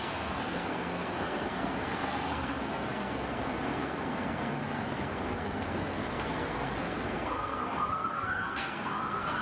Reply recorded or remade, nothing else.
remade